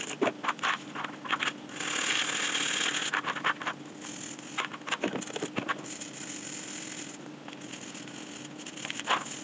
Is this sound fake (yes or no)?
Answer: no